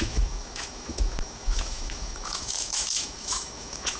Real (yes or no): no